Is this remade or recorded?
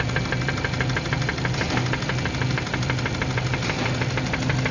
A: remade